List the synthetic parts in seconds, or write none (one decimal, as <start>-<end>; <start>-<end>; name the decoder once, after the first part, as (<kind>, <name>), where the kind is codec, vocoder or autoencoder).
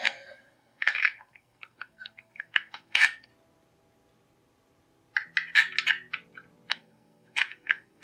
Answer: 0.0-3.3 (codec, SNAC); 6.7-8.0